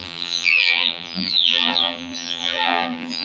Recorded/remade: remade